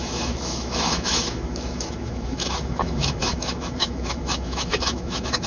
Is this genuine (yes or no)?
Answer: no